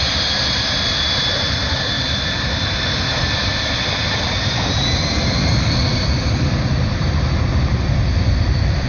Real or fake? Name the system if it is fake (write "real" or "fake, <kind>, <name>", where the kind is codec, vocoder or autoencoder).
real